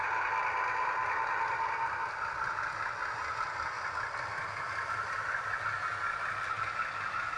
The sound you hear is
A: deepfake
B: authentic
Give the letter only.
B